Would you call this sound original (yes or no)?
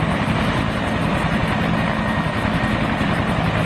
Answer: yes